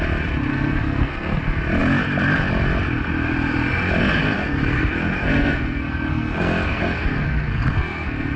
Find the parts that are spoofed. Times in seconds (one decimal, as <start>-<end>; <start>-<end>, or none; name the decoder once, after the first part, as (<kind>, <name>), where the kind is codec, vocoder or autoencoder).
0.5-1.4 (codec, SNAC); 4.0-8.4